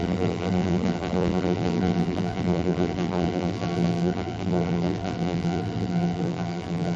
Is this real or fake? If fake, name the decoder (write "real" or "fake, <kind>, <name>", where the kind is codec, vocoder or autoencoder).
fake, vocoder, BigVGAN v2